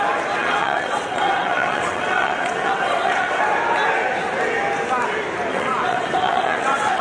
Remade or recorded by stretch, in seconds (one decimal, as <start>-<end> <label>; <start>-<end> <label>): 0.0-0.4 recorded; 0.4-3.4 remade; 3.4-5.5 recorded; 5.5-7.0 remade